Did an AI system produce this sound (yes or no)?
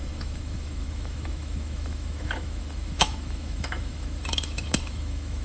yes